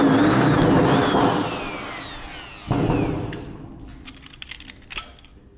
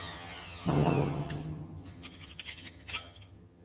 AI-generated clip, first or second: second